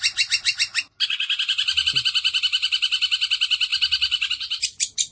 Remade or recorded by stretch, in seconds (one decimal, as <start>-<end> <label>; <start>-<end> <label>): 0.0-5.1 recorded

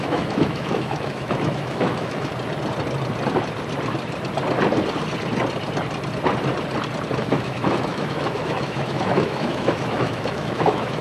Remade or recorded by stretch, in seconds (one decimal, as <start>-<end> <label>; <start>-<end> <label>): 0.0-2.3 remade; 2.3-7.2 recorded; 7.2-11.0 remade

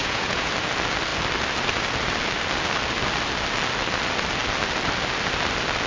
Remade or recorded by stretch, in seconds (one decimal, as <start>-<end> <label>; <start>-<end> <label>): 0.0-0.5 remade; 0.5-5.9 recorded

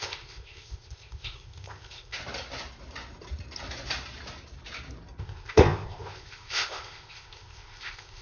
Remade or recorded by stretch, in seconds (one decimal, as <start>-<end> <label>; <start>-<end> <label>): 0.0-2.2 remade; 2.2-5.2 recorded; 5.2-8.2 remade

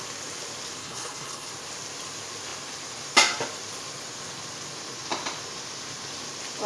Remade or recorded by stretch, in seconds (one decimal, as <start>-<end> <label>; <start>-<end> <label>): 0.0-0.8 recorded; 0.8-1.5 remade; 1.5-6.7 recorded

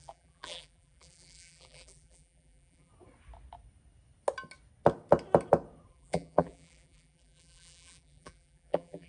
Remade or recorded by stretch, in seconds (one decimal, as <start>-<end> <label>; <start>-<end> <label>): 0.0-2.9 remade; 2.9-5.9 recorded; 5.9-9.1 remade